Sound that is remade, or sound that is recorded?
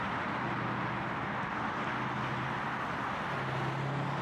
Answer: recorded